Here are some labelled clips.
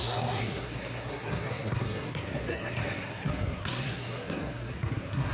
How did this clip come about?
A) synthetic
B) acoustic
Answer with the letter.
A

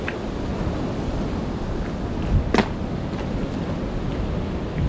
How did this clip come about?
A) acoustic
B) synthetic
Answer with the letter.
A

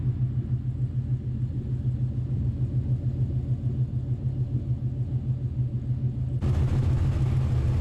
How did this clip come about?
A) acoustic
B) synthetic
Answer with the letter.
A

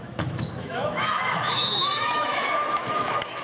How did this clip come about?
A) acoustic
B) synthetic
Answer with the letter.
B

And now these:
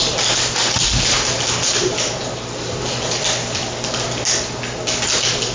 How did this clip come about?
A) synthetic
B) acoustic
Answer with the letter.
B